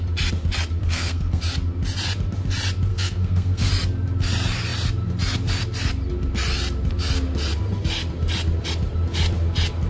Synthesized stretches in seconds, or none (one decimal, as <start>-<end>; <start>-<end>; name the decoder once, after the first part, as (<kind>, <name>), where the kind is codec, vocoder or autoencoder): 0.8-1.4 (codec, SNAC); 2.9-3.7